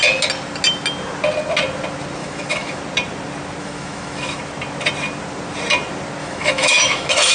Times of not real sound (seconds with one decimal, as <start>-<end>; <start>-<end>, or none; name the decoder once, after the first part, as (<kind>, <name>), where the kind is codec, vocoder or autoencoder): 2.2-2.8 (autoencoder, DAC-VAE); 3.6-4.4; 6.2-7.3